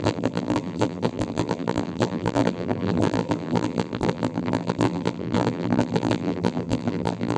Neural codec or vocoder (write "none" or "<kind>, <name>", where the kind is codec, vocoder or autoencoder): vocoder, BigVGAN v2